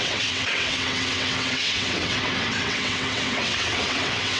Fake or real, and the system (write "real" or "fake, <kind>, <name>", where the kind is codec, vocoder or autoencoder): fake, vocoder, WaveNeXt